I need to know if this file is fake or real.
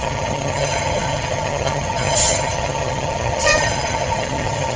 fake